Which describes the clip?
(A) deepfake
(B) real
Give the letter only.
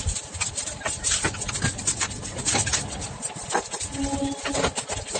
B